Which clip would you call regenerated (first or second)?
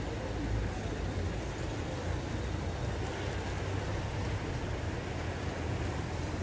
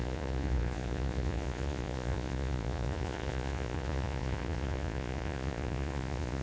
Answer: second